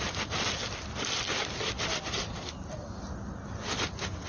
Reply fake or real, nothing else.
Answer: real